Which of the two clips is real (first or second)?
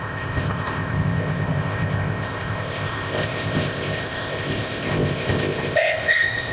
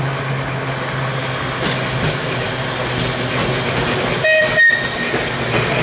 second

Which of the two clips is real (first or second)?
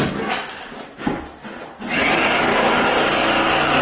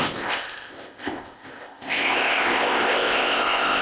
first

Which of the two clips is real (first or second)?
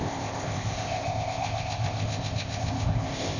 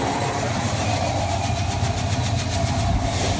second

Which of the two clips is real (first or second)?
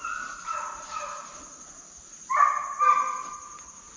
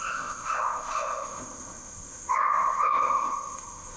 first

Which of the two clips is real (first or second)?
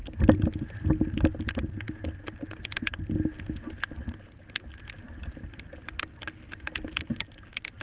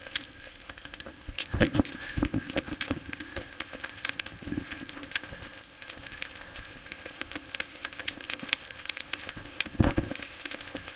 first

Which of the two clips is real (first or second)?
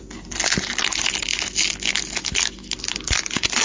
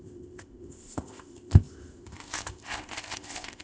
first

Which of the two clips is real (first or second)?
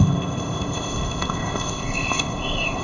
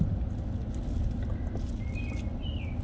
second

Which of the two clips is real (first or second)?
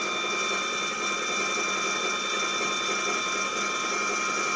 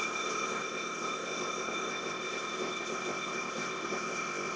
first